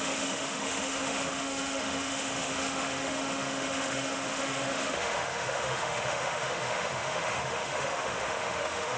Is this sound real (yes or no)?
no